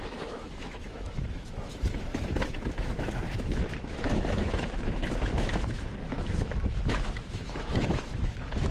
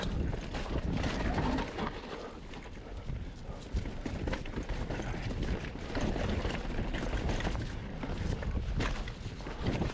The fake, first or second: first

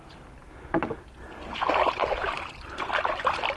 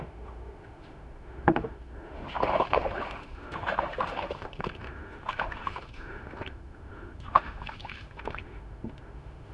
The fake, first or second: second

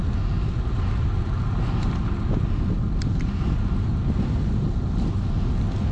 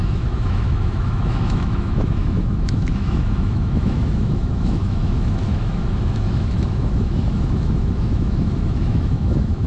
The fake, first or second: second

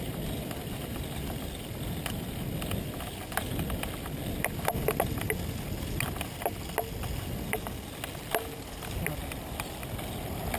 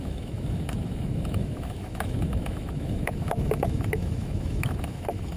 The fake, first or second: second